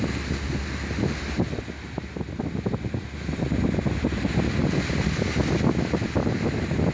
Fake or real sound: real